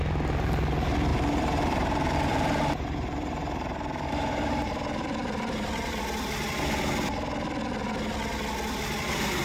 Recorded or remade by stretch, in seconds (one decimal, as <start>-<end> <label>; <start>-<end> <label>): 0.0-1.1 recorded; 1.1-6.0 remade; 6.0-9.4 recorded